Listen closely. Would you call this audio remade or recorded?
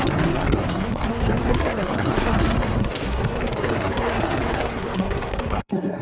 remade